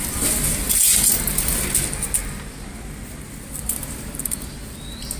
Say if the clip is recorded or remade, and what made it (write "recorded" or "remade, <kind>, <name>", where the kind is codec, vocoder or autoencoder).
recorded